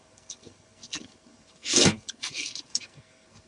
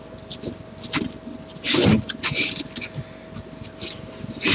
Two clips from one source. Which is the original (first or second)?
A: second